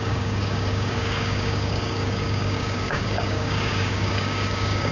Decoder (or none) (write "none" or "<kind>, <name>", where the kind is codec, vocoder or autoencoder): codec, DAC